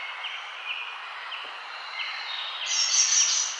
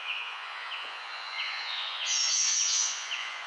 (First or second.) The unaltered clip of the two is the first